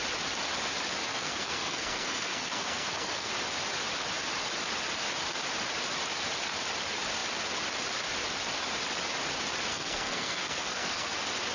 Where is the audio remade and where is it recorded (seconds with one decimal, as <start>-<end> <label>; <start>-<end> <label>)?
0.0-1.1 recorded; 1.1-3.3 remade; 3.3-9.7 recorded; 9.7-11.1 remade; 11.1-11.5 recorded